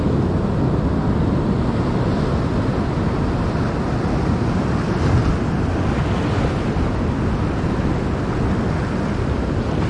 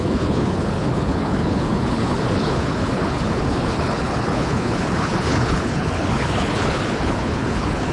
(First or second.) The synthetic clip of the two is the second